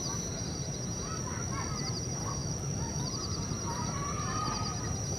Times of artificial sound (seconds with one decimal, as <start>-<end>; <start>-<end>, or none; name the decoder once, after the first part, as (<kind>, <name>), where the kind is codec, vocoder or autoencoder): 0.0-1.1 (vocoder, BigVGAN v2); 1.8-2.4; 3.1-5.2